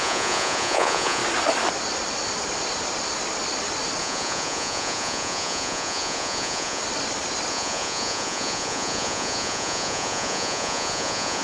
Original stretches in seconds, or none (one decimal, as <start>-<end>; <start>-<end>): 1.2-4.0; 6.8-7.5